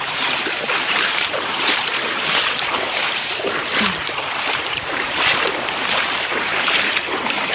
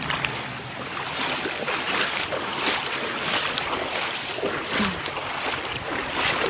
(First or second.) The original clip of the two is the second